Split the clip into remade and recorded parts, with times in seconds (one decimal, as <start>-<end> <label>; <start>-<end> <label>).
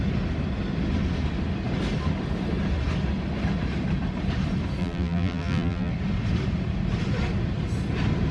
0.0-4.8 recorded; 4.8-5.9 remade; 5.9-8.3 recorded